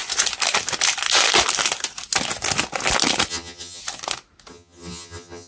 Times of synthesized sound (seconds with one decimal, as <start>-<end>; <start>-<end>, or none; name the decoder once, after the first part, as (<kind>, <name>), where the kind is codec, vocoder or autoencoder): 3.3-3.8 (vocoder, HiFi-GAN); 4.5-5.5